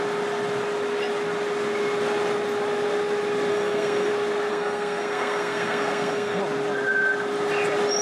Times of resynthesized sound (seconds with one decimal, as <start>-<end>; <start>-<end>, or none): 3.5-4.1; 4.5-6.4